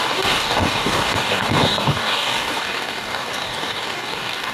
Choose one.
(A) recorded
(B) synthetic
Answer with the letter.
B